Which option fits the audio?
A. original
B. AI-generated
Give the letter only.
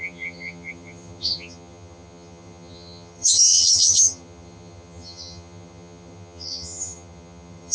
B